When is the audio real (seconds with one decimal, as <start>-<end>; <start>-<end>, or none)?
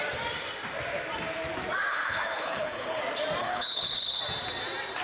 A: 0.0-1.9; 3.0-3.4; 4.2-5.0